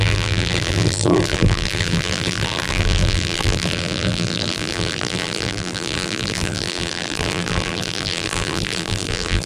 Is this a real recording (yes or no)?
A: no